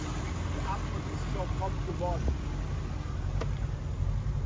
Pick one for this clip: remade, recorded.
recorded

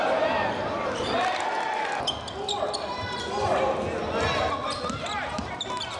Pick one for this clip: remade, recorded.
recorded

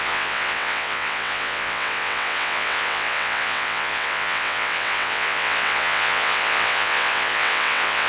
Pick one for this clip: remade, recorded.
remade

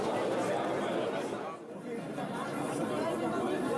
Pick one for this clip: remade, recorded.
recorded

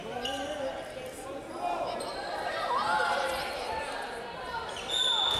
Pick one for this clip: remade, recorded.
recorded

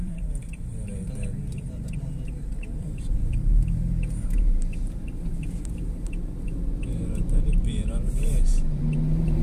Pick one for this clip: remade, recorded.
remade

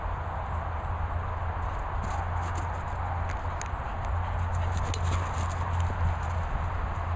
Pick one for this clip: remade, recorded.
recorded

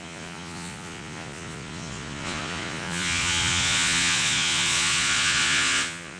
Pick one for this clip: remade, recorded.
remade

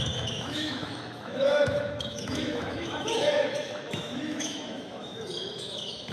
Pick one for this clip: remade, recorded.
remade